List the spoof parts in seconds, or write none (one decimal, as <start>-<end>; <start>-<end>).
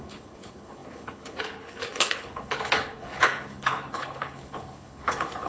0.0-5.5